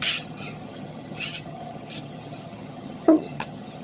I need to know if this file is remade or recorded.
remade